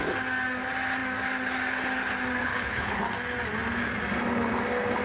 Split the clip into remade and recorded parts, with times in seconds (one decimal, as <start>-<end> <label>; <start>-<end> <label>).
0.0-2.4 recorded; 2.4-3.0 remade; 3.0-5.0 recorded